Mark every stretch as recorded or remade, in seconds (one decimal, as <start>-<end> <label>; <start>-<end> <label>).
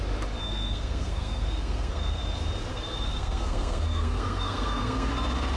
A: 0.0-0.4 recorded; 0.4-2.2 remade; 2.2-2.7 recorded; 2.7-5.1 remade; 5.1-5.6 recorded